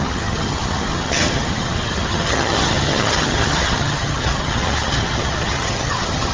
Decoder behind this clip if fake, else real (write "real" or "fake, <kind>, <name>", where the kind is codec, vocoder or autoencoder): fake, vocoder, HiFi-GAN